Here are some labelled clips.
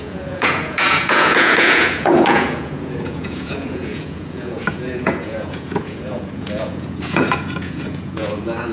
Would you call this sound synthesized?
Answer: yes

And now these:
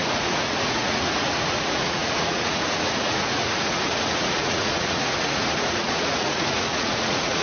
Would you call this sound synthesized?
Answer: yes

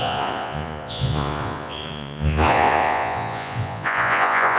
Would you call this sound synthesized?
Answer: yes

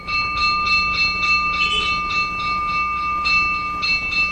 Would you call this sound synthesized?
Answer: no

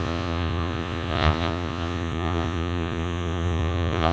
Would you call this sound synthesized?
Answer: yes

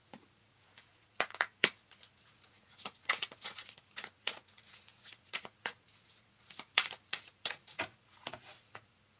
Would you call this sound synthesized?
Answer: yes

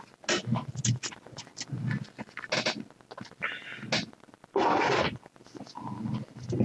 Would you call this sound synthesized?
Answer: no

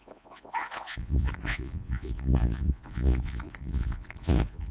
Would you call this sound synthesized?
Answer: yes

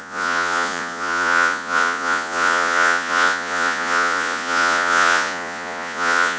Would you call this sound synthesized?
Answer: yes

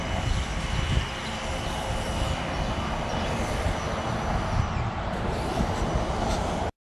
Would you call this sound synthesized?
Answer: no